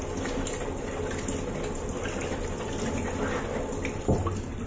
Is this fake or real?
real